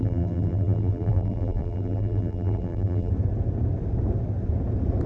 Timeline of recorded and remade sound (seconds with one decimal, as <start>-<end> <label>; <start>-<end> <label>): 0.0-3.1 remade; 3.1-5.1 recorded